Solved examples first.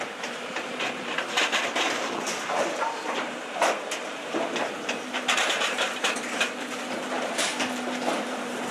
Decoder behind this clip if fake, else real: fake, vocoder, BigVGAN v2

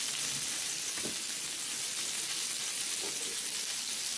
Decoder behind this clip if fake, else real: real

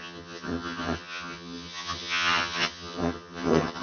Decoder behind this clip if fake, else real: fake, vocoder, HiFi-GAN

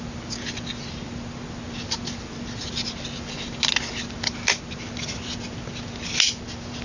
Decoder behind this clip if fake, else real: real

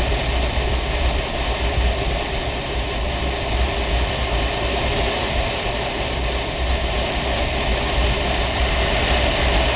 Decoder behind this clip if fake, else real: real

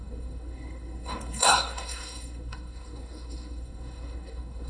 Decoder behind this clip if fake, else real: fake, codec, SNAC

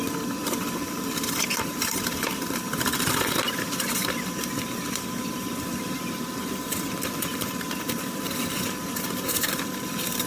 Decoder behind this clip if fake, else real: fake, vocoder, BigVGAN v2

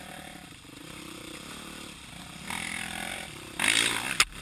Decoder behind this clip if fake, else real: fake, vocoder, BigVGAN v2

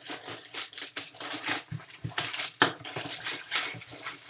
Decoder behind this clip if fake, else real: real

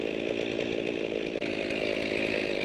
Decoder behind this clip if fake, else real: real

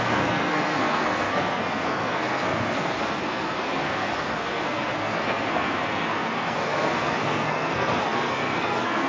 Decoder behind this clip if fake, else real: fake, codec, SNAC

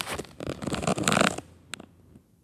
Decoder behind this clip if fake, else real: real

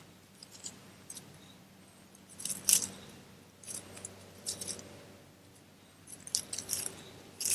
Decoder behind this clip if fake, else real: real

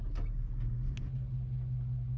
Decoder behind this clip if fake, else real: real